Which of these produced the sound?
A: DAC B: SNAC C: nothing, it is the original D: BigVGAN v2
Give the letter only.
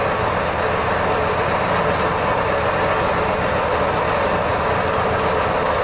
C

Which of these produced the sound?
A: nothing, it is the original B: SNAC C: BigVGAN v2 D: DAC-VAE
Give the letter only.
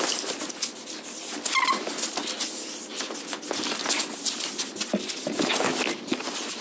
A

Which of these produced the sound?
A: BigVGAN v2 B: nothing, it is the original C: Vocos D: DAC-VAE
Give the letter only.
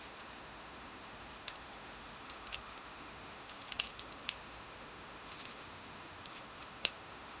D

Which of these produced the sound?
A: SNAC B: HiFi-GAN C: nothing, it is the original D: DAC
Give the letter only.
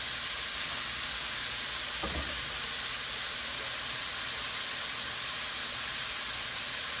C